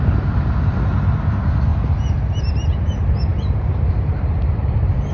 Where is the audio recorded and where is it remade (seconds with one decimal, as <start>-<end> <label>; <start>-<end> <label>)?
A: 0.0-1.7 remade; 1.7-2.4 recorded; 2.4-5.1 remade